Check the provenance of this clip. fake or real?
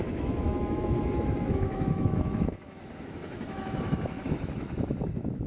fake